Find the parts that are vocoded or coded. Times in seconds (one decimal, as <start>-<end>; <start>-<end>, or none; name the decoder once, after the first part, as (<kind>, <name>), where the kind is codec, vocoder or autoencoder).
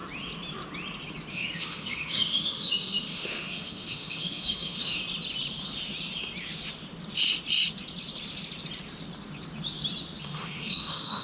1.3-5.0 (autoencoder, DAC-VAE); 10.2-11.2